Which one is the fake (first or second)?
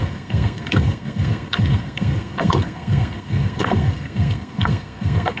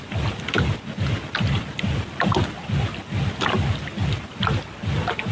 first